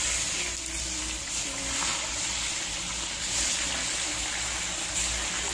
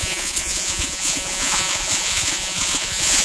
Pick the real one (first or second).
first